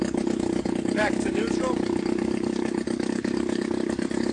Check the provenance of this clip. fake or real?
fake